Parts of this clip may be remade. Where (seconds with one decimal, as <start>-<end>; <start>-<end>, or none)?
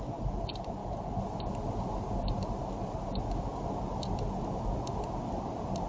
none